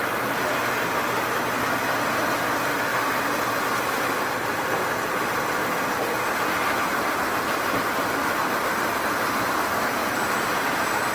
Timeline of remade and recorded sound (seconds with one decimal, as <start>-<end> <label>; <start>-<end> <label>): 0.0-11.1 recorded